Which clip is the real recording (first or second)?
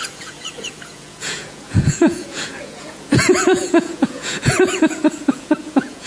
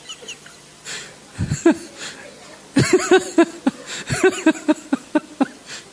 second